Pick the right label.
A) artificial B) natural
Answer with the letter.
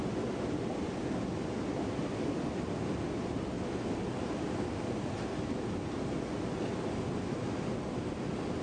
B